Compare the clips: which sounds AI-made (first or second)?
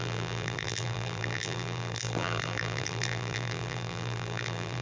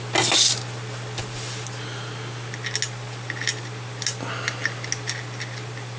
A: first